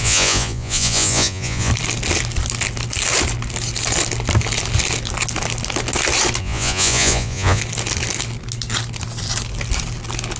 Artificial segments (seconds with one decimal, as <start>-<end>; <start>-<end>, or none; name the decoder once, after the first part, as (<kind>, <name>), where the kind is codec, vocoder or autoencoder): 0.0-1.7 (vocoder, Vocos); 6.4-7.6